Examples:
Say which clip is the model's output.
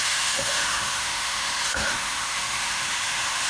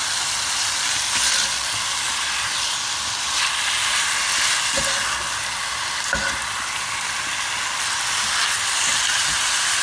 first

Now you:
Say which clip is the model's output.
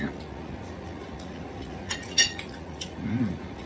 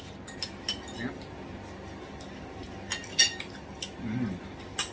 first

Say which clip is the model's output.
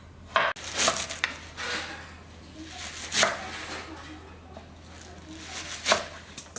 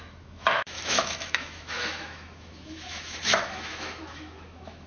second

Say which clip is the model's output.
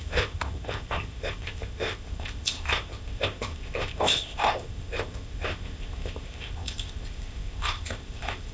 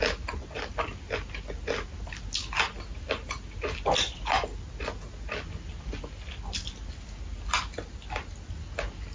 first